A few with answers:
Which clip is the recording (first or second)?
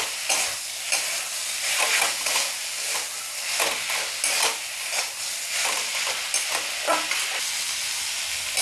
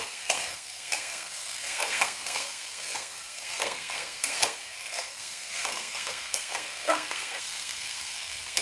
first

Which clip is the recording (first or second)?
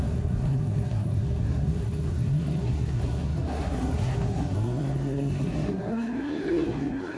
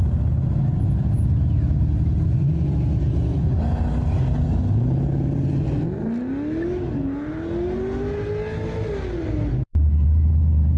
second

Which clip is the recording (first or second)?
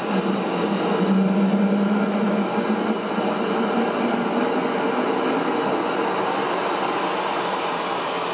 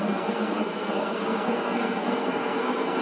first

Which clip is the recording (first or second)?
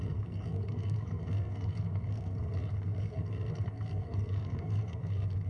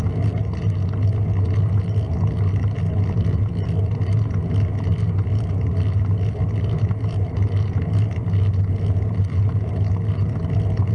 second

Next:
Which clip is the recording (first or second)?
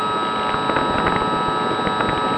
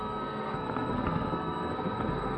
first